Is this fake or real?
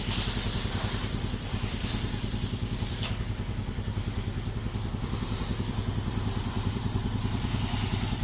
real